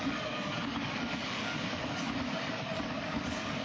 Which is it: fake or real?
fake